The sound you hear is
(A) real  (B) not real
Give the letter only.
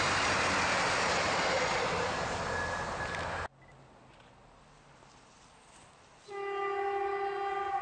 A